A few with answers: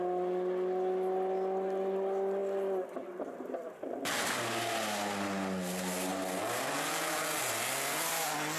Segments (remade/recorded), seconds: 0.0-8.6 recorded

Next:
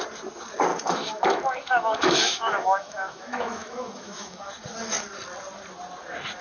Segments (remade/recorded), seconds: 0.0-0.7 recorded; 0.7-4.5 remade; 4.5-6.4 recorded

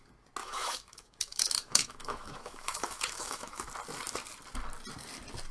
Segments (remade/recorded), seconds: 0.0-0.4 recorded; 0.4-3.7 remade; 3.7-5.5 recorded

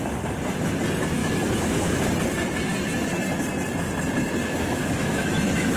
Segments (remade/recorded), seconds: 0.0-1.2 recorded; 1.2-2.0 remade; 2.0-4.4 recorded; 4.4-5.8 remade

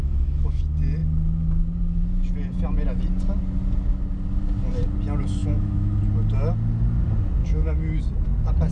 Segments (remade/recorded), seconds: 0.0-0.6 remade; 0.6-5.4 recorded; 5.4-6.0 remade; 6.0-7.4 recorded; 7.4-8.0 remade; 8.0-8.7 recorded